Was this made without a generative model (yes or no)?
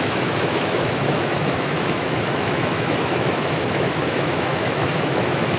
no